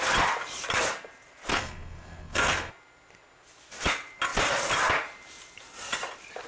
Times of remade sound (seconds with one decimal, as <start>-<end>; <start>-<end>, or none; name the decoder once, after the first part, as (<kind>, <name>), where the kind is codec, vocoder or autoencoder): 1.5-2.7 (codec, SNAC)